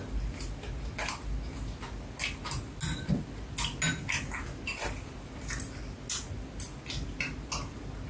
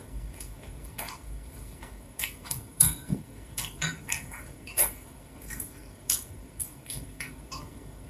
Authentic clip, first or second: first